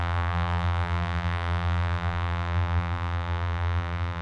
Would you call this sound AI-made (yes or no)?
yes